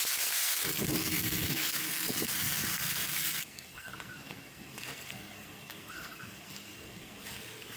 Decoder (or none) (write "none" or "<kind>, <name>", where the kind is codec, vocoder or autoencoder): codec, SNAC